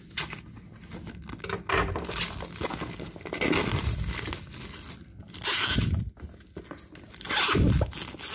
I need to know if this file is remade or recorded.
recorded